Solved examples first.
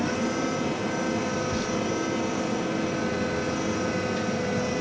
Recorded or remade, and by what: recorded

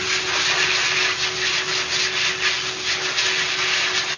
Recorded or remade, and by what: recorded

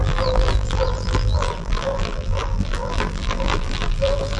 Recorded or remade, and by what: remade, vocoder, BigVGAN v2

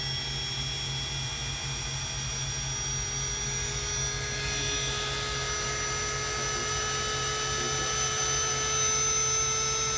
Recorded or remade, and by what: recorded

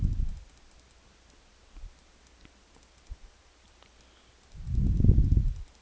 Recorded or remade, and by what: remade, vocoder, BigVGAN v2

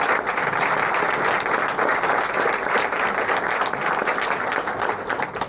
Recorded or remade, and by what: recorded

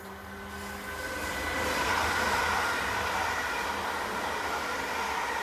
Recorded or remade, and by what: recorded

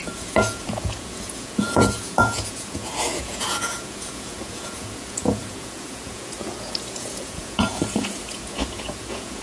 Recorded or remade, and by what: remade, vocoder, Vocos